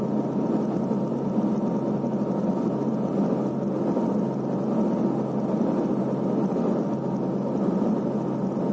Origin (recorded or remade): recorded